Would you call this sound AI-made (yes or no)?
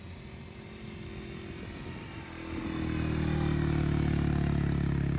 no